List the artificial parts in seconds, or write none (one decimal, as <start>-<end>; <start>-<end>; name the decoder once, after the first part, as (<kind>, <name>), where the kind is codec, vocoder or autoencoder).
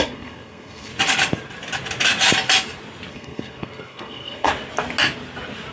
0.0-0.9 (codec, SNAC); 3.1-4.5